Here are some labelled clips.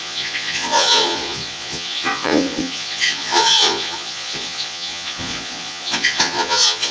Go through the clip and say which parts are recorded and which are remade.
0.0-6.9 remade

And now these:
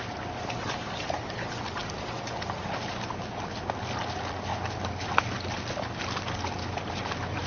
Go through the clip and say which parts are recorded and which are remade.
0.0-7.5 recorded

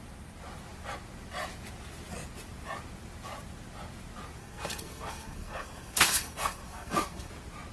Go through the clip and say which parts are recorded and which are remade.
0.0-4.4 recorded; 4.4-7.3 remade; 7.3-7.7 recorded

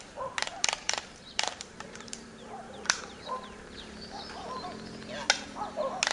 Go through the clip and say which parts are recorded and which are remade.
0.0-0.4 recorded; 0.4-4.1 remade; 4.1-6.1 recorded

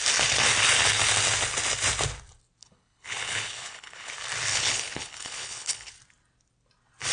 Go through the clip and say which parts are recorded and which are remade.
0.0-2.6 recorded; 2.6-4.1 remade; 4.1-4.5 recorded; 4.5-5.9 remade; 5.9-7.1 recorded

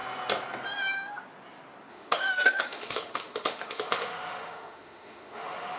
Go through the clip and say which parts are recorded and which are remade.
0.0-1.9 recorded; 1.9-5.8 remade